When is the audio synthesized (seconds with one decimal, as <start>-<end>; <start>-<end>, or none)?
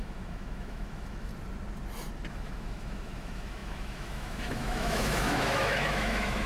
0.0-1.3; 2.3-6.5